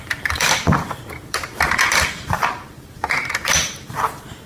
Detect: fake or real fake